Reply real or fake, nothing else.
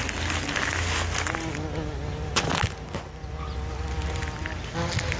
real